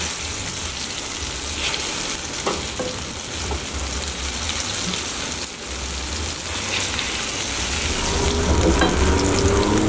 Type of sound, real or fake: real